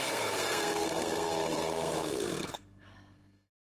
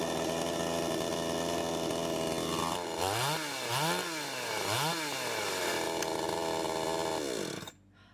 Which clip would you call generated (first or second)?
first